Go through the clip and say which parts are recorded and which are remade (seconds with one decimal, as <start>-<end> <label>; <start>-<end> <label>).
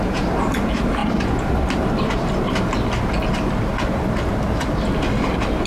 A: 0.0-1.0 recorded; 1.0-2.7 remade; 2.7-5.7 recorded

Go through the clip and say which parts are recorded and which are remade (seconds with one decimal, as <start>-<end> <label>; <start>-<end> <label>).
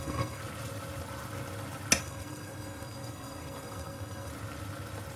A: 0.0-0.4 remade; 0.4-2.0 recorded; 2.0-4.3 remade; 4.3-5.2 recorded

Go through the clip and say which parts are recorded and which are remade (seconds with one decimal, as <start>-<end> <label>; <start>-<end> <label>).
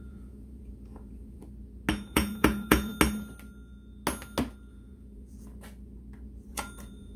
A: 0.0-1.4 remade; 1.4-1.9 recorded; 1.9-2.9 remade; 2.9-4.7 recorded; 4.7-5.5 remade; 5.5-6.5 recorded; 6.5-7.2 remade